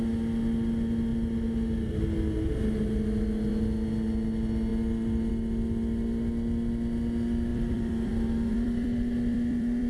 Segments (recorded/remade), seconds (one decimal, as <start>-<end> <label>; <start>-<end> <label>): 0.0-7.5 recorded; 7.5-8.1 remade; 8.1-8.5 recorded; 8.5-9.9 remade